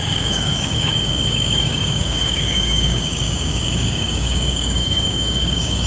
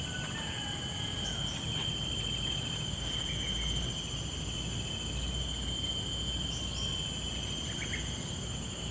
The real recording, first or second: second